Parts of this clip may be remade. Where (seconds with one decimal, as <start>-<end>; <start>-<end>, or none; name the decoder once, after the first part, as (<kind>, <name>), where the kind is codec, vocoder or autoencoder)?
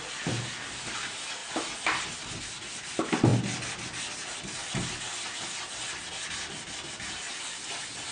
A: 0.0-1.4 (vocoder, BigVGAN v2); 2.4-3.3